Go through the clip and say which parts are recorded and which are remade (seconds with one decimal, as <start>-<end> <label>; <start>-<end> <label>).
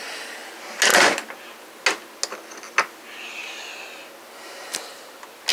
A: 0.0-5.5 recorded